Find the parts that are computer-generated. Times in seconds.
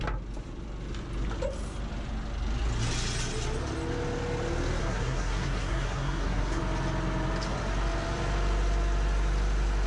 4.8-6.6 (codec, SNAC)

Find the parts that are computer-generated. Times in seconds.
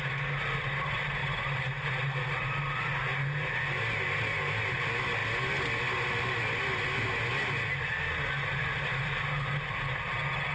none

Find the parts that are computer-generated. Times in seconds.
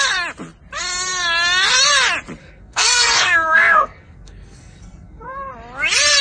2.4-5.5 (codec, SNAC)